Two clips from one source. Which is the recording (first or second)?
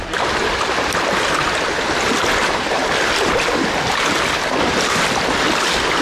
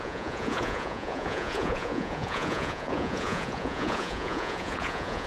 first